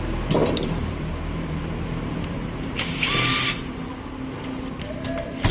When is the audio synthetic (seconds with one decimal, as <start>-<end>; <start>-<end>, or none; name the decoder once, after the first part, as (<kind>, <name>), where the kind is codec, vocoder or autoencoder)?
0.4-3.7 (vocoder, BigVGAN v2)